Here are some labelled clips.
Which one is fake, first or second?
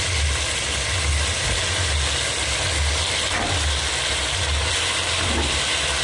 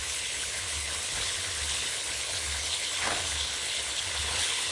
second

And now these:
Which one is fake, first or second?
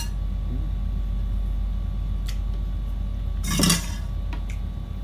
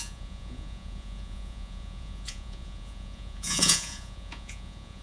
second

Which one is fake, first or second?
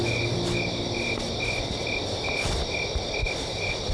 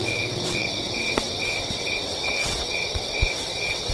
second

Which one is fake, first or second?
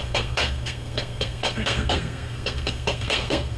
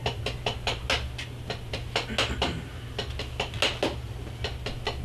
first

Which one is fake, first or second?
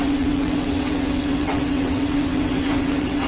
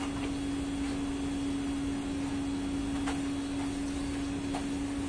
first